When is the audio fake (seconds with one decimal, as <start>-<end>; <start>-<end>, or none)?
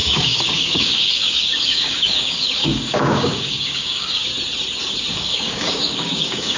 0.0-4.3; 5.1-6.6